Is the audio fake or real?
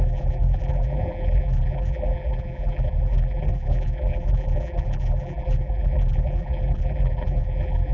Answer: fake